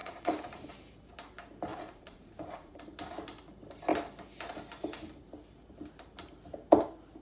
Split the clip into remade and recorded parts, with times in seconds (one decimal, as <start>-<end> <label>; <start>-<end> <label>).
0.0-0.7 remade; 0.7-1.7 recorded; 1.7-2.8 remade; 2.8-7.2 recorded